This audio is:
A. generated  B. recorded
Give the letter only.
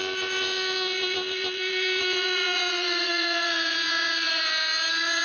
A